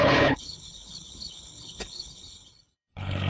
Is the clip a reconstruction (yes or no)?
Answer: yes